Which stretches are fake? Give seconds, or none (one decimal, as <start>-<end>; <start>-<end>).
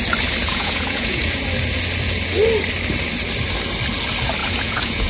0.4-1.2; 4.4-5.1